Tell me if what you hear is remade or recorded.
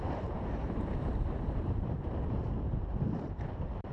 remade